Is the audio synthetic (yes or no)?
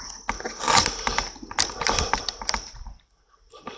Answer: no